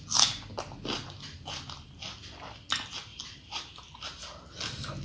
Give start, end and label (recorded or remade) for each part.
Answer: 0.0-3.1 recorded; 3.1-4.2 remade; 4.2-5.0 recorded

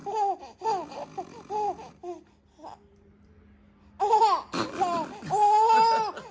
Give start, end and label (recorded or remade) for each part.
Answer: 0.0-6.3 recorded

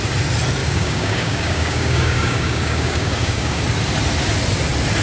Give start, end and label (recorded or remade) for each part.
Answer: 0.0-0.6 recorded; 0.6-3.6 remade; 3.6-5.0 recorded

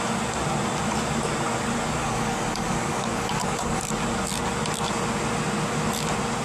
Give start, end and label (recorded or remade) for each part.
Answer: 0.0-2.0 recorded; 2.0-3.9 remade; 3.9-6.4 recorded